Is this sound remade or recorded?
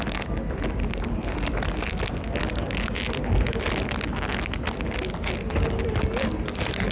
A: recorded